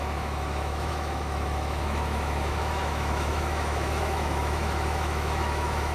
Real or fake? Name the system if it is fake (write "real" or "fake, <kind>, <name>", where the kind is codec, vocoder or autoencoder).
fake, autoencoder, DAC-VAE